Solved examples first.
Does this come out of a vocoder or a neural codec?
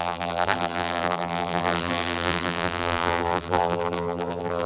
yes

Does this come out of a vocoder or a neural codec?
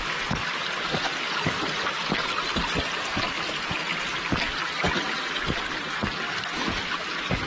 no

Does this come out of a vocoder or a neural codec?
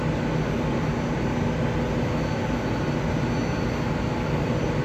no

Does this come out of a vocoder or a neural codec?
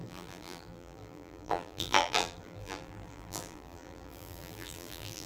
yes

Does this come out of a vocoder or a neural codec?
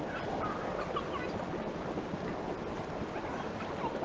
no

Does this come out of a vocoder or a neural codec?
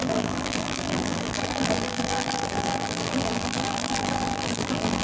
yes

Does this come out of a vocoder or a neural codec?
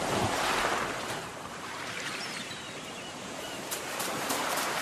yes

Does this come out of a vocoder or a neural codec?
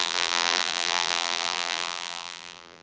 yes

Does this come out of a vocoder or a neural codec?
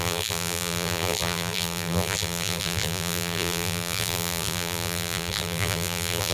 yes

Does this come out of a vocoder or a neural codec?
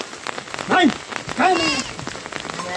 no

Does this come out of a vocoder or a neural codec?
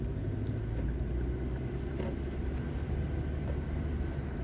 no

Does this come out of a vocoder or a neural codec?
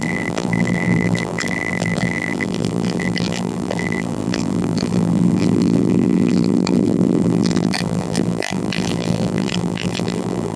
yes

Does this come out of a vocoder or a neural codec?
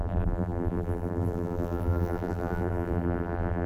yes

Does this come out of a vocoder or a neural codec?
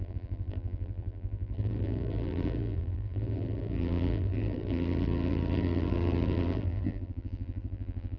yes